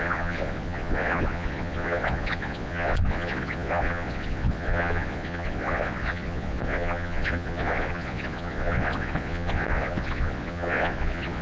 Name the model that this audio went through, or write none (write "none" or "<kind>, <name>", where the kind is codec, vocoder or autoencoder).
vocoder, Vocos